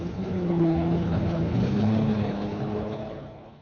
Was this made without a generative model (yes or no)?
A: no